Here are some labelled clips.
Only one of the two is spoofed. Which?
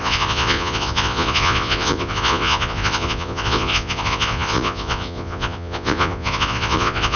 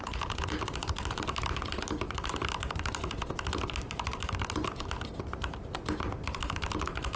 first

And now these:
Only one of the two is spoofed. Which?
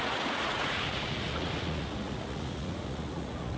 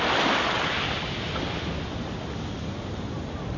first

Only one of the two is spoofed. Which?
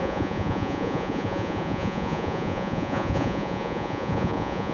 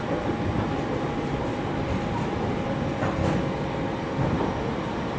first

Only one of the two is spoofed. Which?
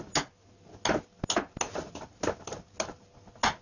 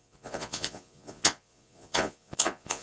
second